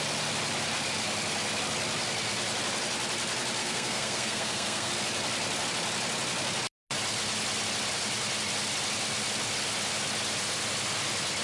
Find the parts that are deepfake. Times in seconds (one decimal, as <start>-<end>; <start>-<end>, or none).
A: 3.6-4.9